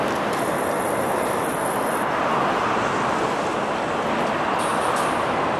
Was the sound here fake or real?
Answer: real